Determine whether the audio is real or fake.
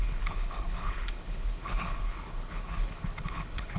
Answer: fake